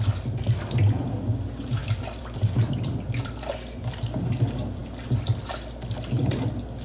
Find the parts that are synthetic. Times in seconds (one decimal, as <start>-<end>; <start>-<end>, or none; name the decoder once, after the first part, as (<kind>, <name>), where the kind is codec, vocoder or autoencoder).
1.8-3.5 (vocoder, BigVGAN v2); 4.8-5.5